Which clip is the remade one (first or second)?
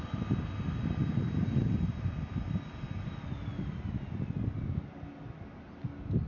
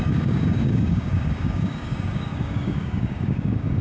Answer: second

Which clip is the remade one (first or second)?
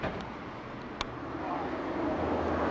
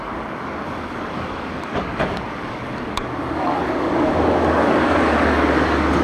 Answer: second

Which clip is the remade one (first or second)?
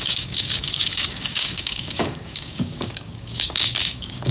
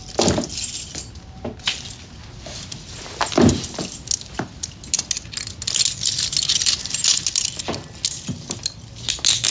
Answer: first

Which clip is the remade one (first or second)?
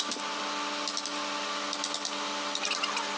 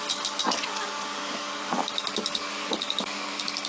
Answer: second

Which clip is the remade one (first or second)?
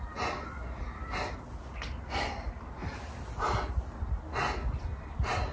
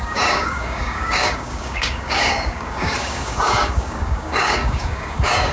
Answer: second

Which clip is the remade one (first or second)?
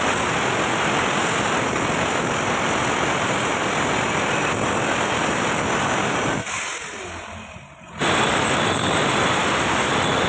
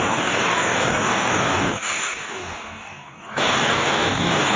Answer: second